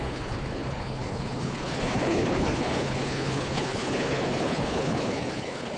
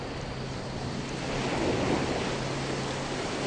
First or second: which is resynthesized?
first